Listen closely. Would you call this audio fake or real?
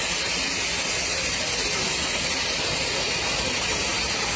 real